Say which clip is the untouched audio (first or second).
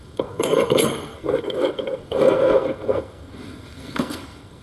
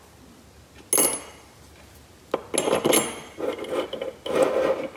second